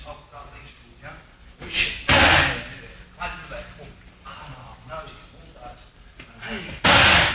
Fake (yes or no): no